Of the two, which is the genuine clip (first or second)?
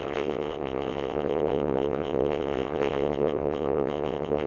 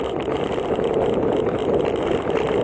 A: second